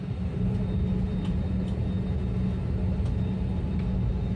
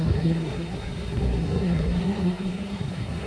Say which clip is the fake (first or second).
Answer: second